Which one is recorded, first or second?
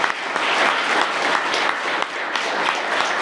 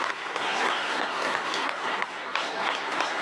first